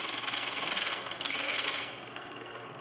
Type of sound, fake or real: fake